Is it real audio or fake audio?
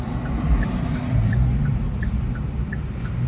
real